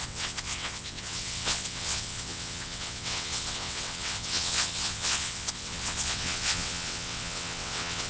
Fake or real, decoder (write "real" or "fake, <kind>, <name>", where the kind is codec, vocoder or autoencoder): fake, vocoder, WaveNeXt